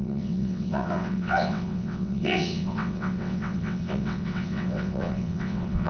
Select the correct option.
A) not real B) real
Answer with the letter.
A